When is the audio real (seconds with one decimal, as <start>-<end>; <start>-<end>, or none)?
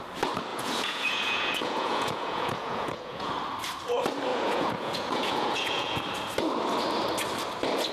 0.0-0.5; 3.3-4.3; 6.0-7.9